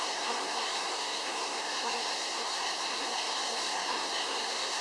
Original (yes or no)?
no